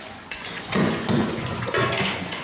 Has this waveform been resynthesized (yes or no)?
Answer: yes